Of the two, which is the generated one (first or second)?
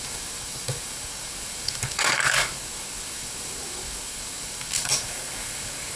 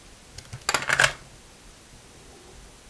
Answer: first